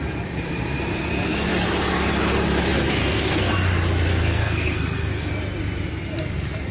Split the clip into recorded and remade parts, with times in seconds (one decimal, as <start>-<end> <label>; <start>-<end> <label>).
0.0-3.0 recorded; 3.0-3.5 remade; 3.5-4.1 recorded; 4.1-5.3 remade; 5.3-6.7 recorded